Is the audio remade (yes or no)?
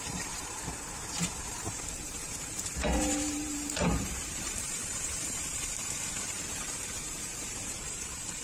yes